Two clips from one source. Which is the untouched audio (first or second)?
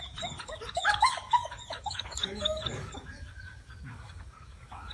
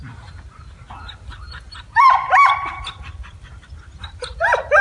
second